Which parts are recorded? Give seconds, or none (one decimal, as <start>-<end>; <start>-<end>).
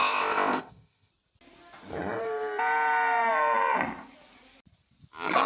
1.1-5.5